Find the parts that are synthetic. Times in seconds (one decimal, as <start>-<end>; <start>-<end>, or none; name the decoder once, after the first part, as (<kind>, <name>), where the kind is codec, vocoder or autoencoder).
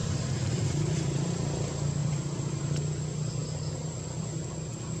0.0-1.3 (vocoder, BigVGAN v2); 2.0-2.6